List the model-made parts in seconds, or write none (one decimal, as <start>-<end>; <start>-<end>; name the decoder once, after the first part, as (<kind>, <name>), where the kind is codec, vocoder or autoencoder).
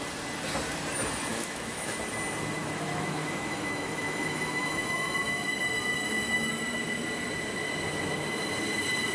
1.3-2.0 (autoencoder, DAC-VAE); 2.6-6.5